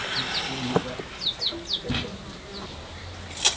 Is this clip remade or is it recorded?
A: recorded